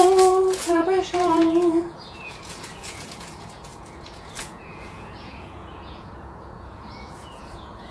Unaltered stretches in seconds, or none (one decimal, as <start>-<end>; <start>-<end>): none